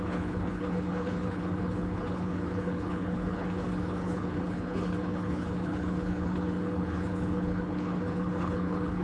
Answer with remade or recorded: remade